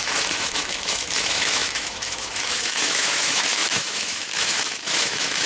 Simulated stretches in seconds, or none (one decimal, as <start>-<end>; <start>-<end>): 0.0-5.5